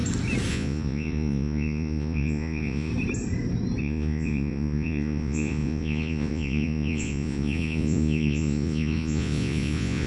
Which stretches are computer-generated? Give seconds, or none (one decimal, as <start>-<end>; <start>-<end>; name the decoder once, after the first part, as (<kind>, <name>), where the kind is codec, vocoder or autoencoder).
0.5-2.9 (vocoder, Vocos); 3.8-10.1